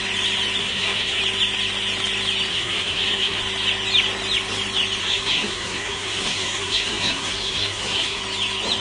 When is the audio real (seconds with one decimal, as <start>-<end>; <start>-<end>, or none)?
0.0-0.6; 1.2-2.5; 3.4-5.0; 8.2-8.8